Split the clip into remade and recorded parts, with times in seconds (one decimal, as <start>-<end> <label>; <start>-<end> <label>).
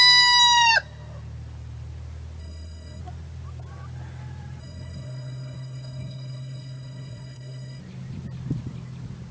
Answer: 0.0-2.4 recorded; 2.4-3.0 remade; 3.0-4.6 recorded; 4.6-7.8 remade; 7.8-9.3 recorded